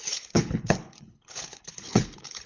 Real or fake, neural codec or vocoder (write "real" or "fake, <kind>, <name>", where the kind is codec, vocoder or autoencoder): fake, codec, HILCodec